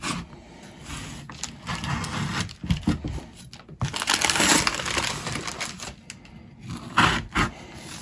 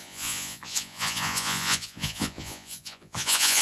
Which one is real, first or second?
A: first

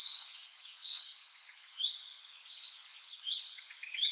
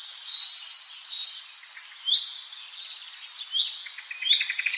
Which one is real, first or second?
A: second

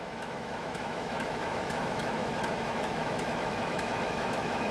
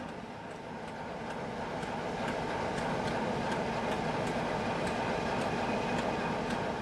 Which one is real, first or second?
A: second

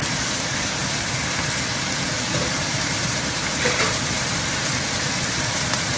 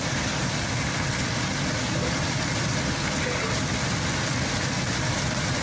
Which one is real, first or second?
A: second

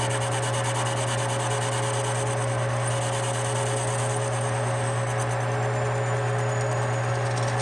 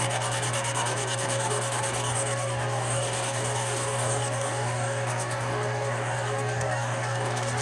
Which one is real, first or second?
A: first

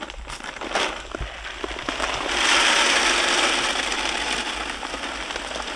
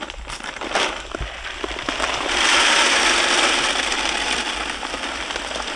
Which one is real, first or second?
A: first